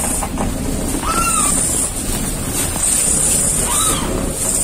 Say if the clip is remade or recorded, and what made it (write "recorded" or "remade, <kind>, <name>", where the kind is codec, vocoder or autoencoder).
recorded